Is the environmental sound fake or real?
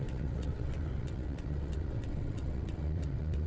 fake